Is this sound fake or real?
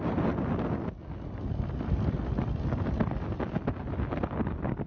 real